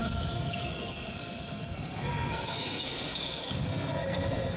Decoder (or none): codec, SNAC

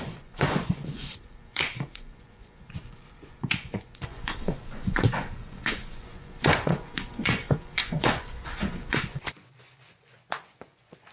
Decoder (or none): vocoder, Vocos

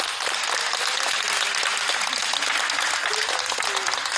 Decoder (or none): none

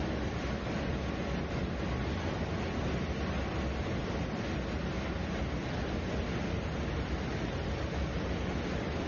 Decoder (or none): none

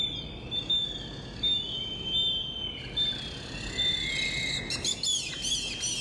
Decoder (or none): none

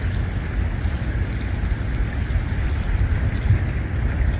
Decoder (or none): none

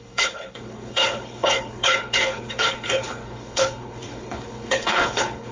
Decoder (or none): codec, HILCodec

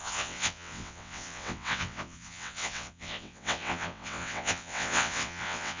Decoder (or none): vocoder, WaveNeXt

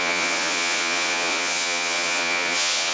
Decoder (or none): vocoder, Vocos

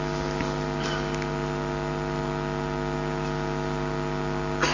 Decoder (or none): none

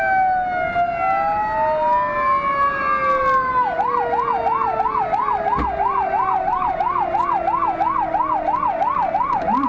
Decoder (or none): none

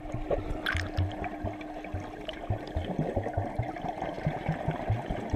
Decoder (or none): none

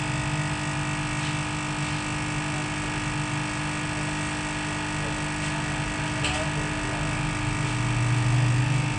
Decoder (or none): none